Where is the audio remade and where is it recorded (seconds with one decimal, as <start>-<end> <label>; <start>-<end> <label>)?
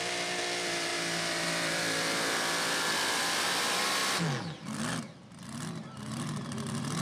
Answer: 0.0-4.0 remade; 4.0-6.1 recorded; 6.1-7.0 remade